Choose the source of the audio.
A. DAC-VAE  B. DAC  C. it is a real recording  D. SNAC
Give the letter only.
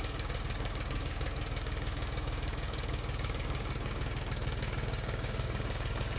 B